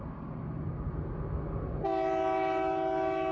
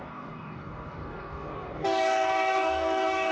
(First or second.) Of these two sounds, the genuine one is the first